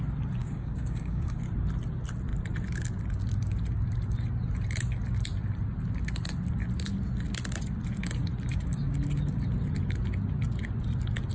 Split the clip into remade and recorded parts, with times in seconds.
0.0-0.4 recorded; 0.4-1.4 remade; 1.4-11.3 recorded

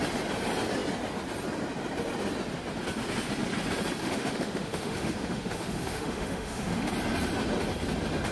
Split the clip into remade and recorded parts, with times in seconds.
0.0-4.0 recorded; 4.0-6.9 remade; 6.9-8.3 recorded

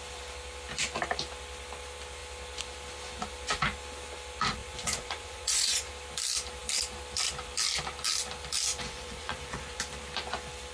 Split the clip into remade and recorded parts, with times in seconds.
0.0-4.6 recorded; 4.6-5.9 remade; 5.9-8.7 recorded; 8.7-9.8 remade; 9.8-10.7 recorded

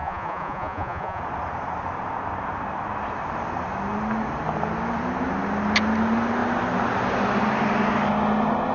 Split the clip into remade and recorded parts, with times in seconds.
0.0-1.2 remade; 1.2-8.7 recorded

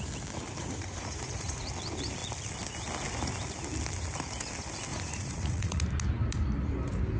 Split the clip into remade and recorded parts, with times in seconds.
0.0-0.6 recorded; 0.6-1.7 remade; 1.7-4.9 recorded; 4.9-5.8 remade; 5.8-7.2 recorded

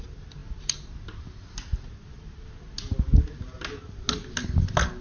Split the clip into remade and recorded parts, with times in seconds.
0.0-5.0 recorded